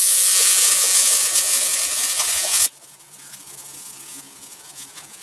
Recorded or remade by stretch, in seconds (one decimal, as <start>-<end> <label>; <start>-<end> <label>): 0.0-5.2 remade